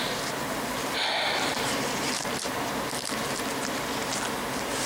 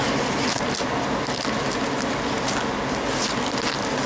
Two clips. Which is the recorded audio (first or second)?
second